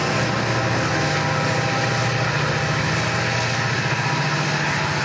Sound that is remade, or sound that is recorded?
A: recorded